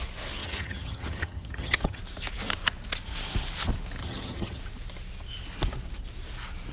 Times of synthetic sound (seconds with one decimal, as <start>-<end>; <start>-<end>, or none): 0.4-2.0; 4.0-4.6